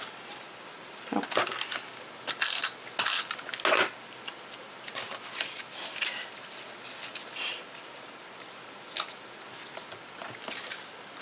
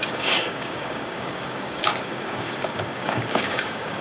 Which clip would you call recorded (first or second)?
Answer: first